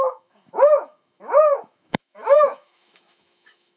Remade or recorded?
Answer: remade